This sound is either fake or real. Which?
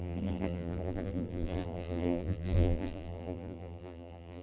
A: fake